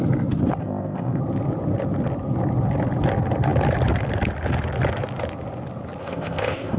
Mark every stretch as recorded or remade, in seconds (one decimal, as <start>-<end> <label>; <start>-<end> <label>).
0.0-0.6 recorded; 0.6-1.2 remade; 1.2-6.0 recorded; 6.0-6.8 remade